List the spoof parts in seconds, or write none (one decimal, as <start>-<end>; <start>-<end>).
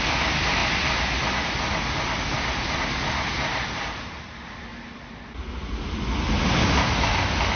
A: none